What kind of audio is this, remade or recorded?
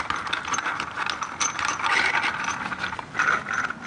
recorded